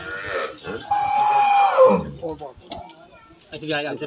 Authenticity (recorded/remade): recorded